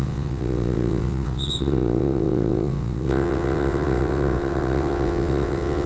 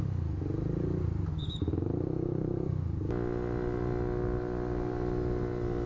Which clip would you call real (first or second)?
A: second